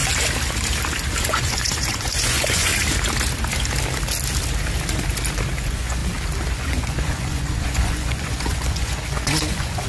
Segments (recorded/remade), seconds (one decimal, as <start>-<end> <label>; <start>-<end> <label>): 0.0-1.2 recorded; 1.2-2.7 remade; 2.7-5.6 recorded; 5.6-6.0 remade; 6.0-6.5 recorded; 6.5-9.9 remade